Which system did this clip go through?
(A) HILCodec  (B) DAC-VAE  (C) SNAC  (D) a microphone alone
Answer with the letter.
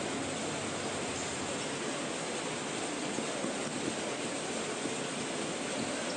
D